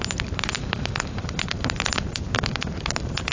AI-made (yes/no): yes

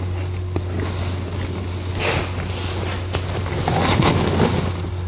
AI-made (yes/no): no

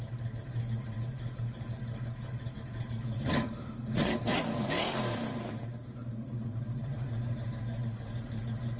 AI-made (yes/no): yes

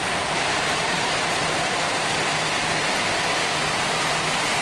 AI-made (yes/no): no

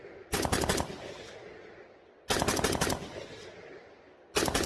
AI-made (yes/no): no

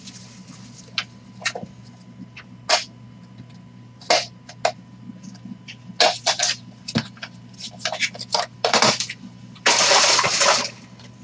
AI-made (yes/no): no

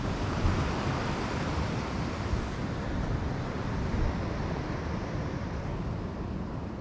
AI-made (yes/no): no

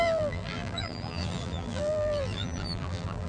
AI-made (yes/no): yes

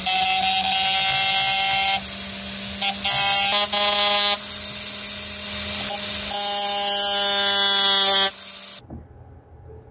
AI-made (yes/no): no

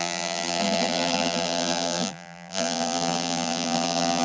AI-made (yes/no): yes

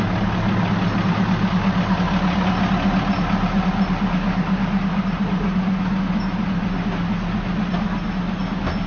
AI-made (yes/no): no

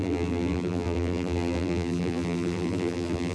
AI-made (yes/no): yes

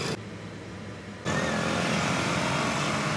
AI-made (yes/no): no